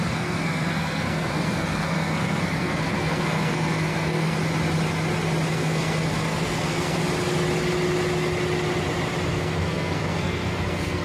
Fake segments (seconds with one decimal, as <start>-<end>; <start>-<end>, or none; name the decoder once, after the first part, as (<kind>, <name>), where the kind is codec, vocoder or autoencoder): 0.0-4.4 (codec, SNAC); 5.5-7.0; 9.3-11.0